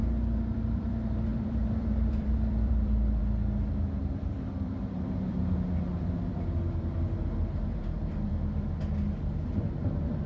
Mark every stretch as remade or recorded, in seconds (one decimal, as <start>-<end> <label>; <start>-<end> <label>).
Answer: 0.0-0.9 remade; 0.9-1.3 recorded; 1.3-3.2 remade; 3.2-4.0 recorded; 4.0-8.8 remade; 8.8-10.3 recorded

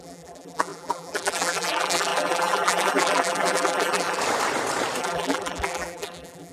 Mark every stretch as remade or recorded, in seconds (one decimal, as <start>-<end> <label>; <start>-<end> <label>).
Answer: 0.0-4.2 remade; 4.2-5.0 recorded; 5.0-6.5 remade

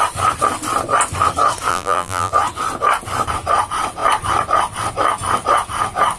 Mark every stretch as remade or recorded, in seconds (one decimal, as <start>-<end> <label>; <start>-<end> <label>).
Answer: 0.0-1.7 recorded; 1.7-2.3 remade; 2.3-6.2 recorded

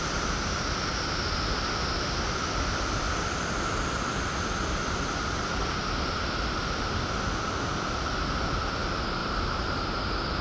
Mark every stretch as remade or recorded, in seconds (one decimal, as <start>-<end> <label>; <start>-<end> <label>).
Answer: 0.0-9.2 recorded; 9.2-10.0 remade; 10.0-10.4 recorded

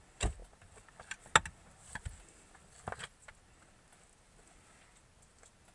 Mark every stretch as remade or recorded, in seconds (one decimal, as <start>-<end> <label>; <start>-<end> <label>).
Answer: 0.0-5.7 recorded

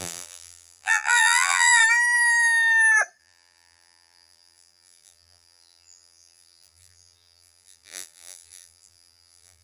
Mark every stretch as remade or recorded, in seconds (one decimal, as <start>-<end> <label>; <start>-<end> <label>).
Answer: 0.0-1.8 remade; 1.8-3.2 recorded; 3.2-9.6 remade

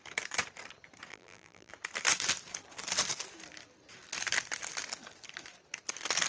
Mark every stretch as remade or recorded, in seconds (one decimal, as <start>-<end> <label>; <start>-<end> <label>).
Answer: 0.0-1.1 recorded; 1.1-1.7 remade; 1.7-6.3 recorded